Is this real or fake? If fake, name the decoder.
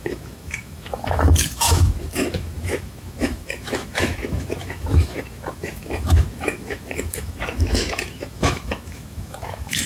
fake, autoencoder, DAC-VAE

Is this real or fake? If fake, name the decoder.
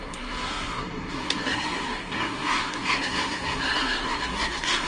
fake, codec, SNAC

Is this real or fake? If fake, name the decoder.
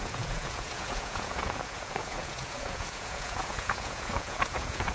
fake, vocoder, Vocos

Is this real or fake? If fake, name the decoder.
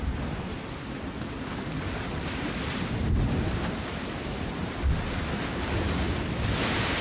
real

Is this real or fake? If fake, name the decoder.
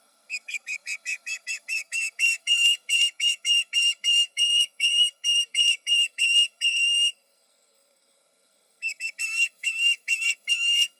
fake, codec, SNAC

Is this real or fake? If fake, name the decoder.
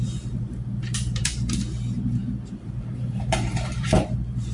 fake, vocoder, BigVGAN v2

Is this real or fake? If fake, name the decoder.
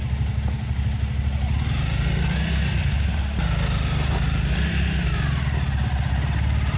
real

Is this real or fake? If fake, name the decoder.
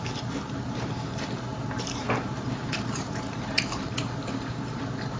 fake, vocoder, BigVGAN v2